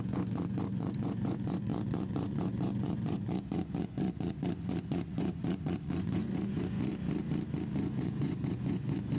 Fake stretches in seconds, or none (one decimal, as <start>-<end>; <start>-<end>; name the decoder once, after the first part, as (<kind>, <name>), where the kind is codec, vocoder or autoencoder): 0.0-6.9 (vocoder, Vocos); 7.7-9.2